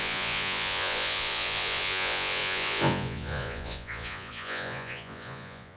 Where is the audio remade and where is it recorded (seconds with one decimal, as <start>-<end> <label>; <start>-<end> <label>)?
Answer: 0.0-5.8 remade